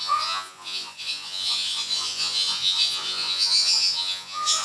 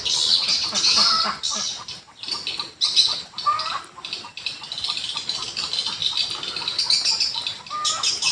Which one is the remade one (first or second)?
first